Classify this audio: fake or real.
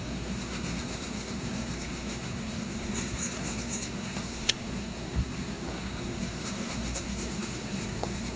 fake